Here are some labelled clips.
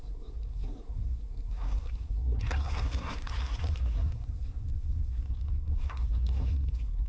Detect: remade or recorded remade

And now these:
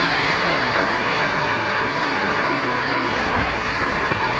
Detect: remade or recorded remade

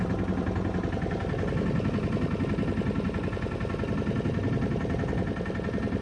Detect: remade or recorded recorded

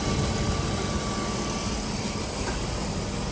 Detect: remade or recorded recorded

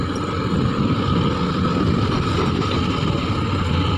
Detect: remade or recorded recorded